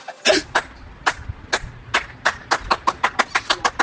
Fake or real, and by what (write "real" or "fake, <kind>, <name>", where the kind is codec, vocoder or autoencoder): real